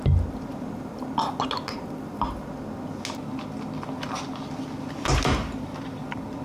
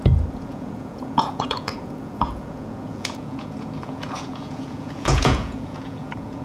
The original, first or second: first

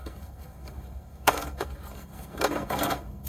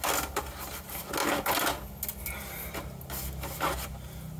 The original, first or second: second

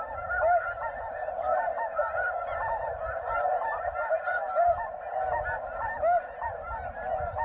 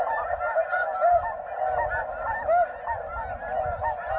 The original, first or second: second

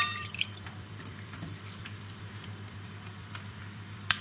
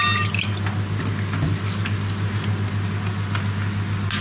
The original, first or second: second